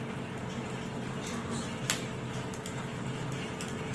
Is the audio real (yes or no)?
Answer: yes